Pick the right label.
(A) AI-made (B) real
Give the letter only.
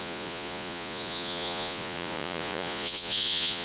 A